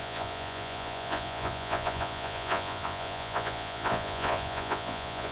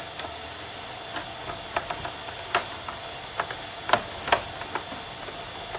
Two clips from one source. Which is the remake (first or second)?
first